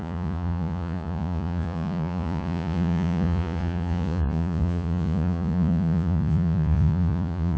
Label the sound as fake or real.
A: fake